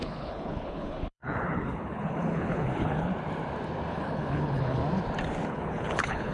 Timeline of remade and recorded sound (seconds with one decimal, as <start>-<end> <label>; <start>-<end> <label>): 0.0-3.1 remade; 3.1-3.9 recorded; 3.9-4.8 remade; 4.8-5.5 recorded; 5.5-6.3 remade